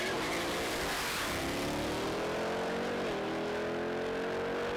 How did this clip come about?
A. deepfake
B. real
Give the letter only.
B